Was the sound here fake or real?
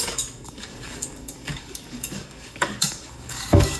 fake